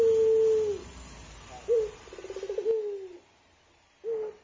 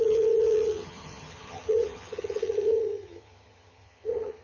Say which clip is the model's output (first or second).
second